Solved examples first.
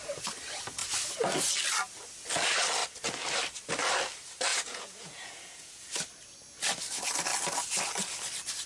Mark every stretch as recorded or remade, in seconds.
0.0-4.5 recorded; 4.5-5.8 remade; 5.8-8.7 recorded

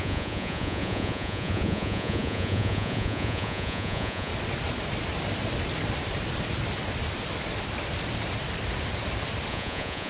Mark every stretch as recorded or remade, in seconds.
0.0-4.3 remade; 4.3-9.5 recorded; 9.5-10.1 remade

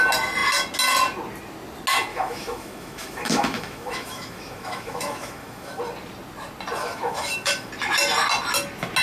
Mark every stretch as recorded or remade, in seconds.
0.0-2.1 recorded; 2.1-5.8 remade; 5.8-6.8 recorded; 6.8-7.7 remade; 7.7-9.0 recorded

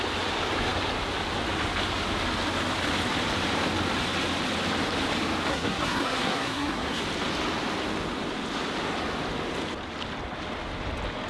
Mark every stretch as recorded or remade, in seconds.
0.0-5.5 recorded; 5.5-7.0 remade; 7.0-11.3 recorded